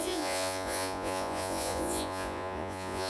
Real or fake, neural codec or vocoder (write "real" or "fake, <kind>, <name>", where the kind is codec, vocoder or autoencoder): fake, vocoder, Vocos